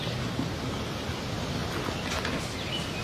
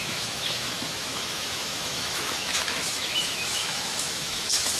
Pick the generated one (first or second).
second